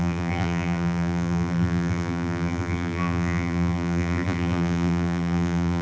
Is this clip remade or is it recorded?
remade